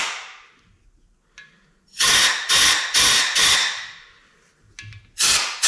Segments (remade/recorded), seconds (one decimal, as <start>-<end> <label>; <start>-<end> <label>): 0.0-5.7 recorded